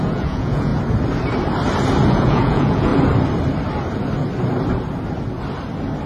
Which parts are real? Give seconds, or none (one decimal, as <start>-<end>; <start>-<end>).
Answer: 0.7-2.1; 2.9-6.1